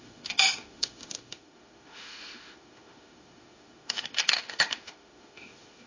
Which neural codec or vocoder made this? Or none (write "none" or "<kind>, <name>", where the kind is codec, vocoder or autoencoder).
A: autoencoder, DAC-VAE